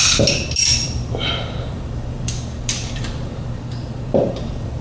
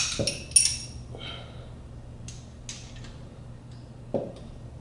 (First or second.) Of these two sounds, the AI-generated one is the first